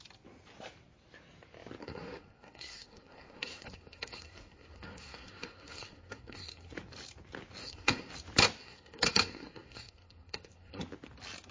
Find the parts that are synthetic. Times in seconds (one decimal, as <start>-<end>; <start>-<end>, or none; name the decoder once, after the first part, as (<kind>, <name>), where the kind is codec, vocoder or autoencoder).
1.8-6.7 (codec, SNAC); 7.6-8.1; 8.6-10.8